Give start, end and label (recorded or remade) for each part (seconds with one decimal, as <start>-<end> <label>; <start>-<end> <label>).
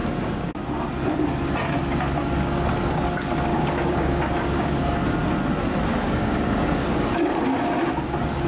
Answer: 0.0-0.5 remade; 0.5-3.5 recorded; 3.5-4.8 remade; 4.8-5.9 recorded; 5.9-7.1 remade; 7.1-8.5 recorded